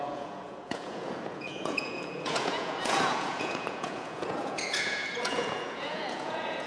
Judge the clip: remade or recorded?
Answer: remade